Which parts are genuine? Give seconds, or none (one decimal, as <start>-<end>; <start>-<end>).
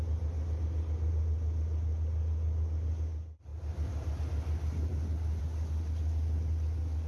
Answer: 0.0-7.1